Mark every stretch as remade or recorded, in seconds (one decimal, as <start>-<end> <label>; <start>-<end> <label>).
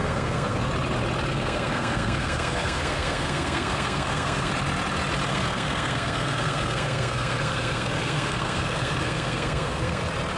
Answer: 0.0-0.7 remade; 0.7-1.3 recorded; 1.3-4.5 remade; 4.5-5.3 recorded; 5.3-10.0 remade; 10.0-10.4 recorded